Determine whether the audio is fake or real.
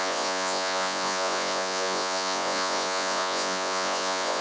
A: fake